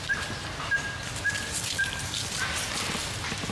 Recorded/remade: recorded